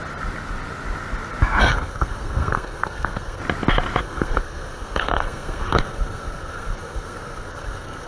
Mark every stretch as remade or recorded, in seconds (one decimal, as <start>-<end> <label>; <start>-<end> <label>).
0.0-1.6 recorded; 1.6-3.4 remade; 3.4-4.0 recorded; 4.0-8.1 remade